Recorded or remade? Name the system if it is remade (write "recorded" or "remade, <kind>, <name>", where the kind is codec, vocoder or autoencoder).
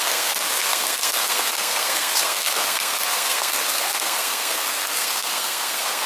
remade, codec, SNAC